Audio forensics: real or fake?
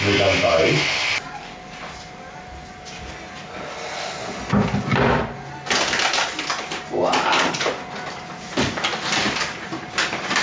real